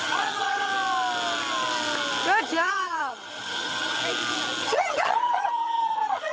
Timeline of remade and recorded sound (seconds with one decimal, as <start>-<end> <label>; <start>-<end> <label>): 0.0-0.7 remade; 0.7-2.4 recorded; 2.4-4.0 remade; 4.0-4.6 recorded; 4.6-6.3 remade